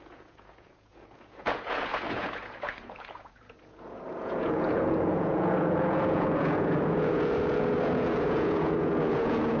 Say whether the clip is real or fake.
fake